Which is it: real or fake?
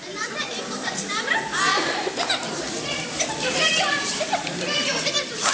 fake